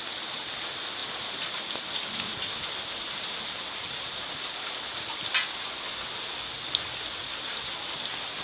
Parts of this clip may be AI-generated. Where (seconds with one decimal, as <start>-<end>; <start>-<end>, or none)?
none